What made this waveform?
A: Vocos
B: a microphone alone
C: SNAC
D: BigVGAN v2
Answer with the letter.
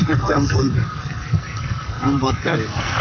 C